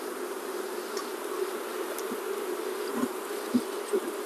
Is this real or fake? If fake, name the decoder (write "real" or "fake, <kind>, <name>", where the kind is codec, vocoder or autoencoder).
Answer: real